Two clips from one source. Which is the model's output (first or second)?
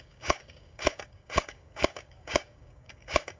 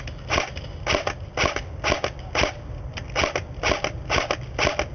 first